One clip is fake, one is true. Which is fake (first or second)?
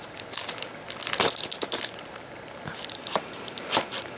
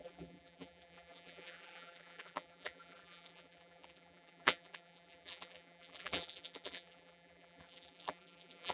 second